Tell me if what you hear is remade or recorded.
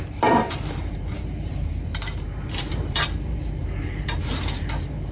remade